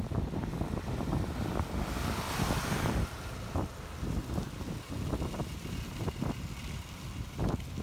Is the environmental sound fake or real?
real